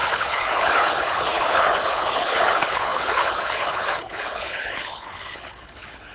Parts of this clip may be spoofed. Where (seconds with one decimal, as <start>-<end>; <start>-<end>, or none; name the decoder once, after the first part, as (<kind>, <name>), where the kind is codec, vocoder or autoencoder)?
0.0-6.1 (codec, HILCodec)